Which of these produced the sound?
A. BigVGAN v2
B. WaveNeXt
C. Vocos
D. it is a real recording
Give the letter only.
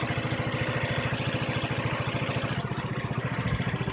D